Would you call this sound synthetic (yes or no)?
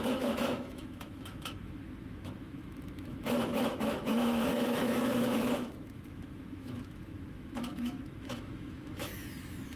yes